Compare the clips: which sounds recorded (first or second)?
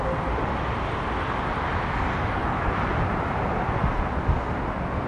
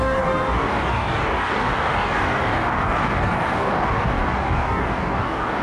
first